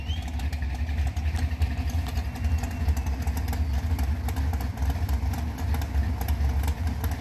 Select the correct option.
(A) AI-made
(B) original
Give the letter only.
B